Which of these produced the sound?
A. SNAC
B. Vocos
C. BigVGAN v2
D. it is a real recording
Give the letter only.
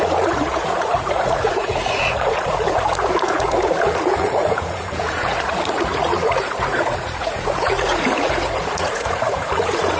B